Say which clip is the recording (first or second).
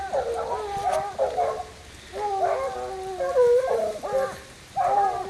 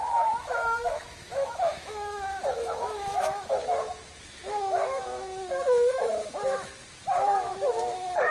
first